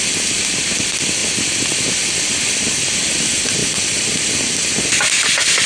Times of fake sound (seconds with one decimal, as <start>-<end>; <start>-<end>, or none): none